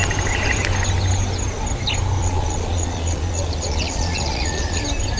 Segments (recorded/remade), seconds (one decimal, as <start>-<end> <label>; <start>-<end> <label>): 0.0-2.2 recorded; 2.2-4.8 remade; 4.8-5.2 recorded